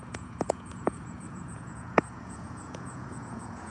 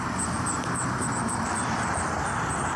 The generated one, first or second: first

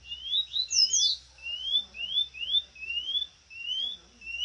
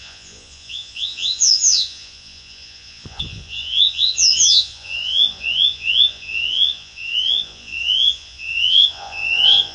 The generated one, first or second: second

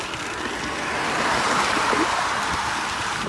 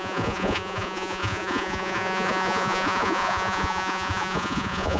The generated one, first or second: second